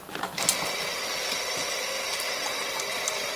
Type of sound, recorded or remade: recorded